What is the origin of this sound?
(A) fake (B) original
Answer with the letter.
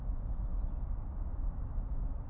B